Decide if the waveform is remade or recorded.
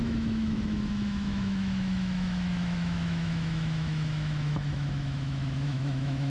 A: remade